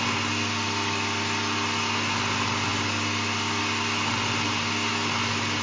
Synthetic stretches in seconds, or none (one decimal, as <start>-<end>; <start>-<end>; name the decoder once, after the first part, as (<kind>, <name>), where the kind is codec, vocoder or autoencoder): none